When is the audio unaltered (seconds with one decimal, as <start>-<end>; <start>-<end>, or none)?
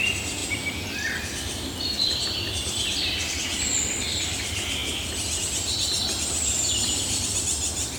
0.0-0.4; 4.0-8.0